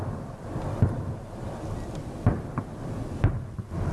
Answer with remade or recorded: remade